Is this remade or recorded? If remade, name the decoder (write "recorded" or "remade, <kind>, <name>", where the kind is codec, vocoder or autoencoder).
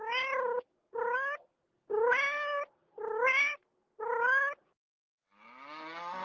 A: recorded